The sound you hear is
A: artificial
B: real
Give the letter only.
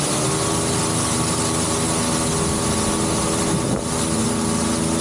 B